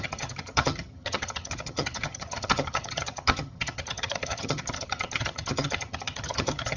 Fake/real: fake